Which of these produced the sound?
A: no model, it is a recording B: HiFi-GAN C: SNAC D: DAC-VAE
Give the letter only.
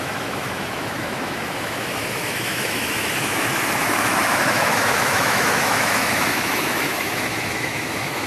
D